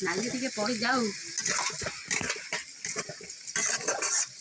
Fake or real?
real